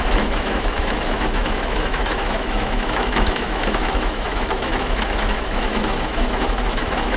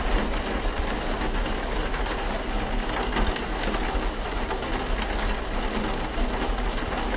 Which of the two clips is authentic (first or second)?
second